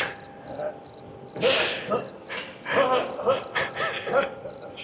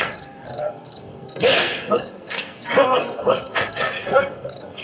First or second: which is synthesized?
second